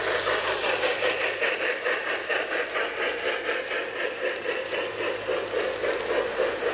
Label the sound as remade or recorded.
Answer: recorded